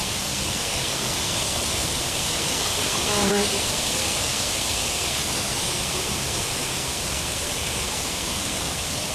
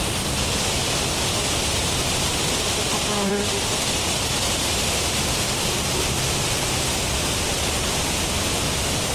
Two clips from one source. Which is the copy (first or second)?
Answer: first